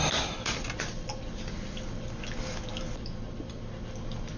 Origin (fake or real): real